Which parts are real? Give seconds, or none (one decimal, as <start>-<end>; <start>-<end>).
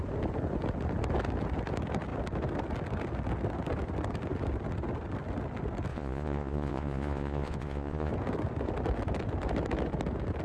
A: 0.0-5.9; 8.1-10.4